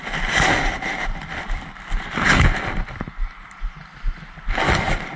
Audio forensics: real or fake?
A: real